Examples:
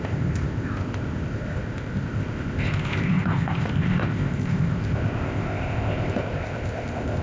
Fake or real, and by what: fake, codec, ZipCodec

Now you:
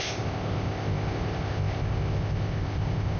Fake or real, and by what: fake, codec, ZipCodec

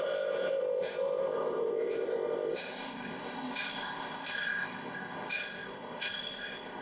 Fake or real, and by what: fake, codec, ZipCodec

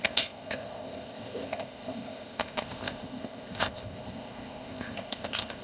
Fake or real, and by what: fake, codec, ZipCodec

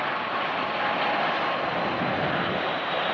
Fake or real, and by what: real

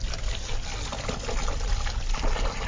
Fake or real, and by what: real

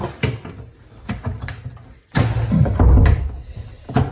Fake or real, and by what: real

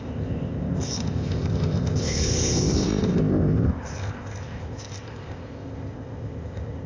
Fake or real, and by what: fake, codec, ZipCodec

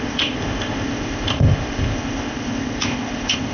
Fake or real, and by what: fake, codec, ZipCodec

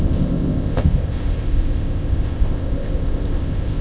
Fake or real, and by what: fake, codec, ZipCodec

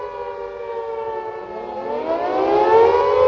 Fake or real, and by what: real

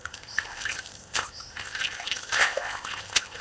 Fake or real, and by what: fake, codec, ZipCodec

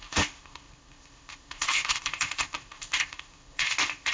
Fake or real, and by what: fake, codec, ZipCodec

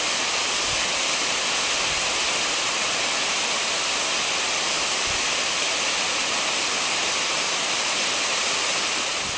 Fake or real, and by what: real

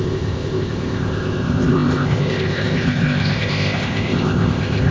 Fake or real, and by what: fake, codec, ZipCodec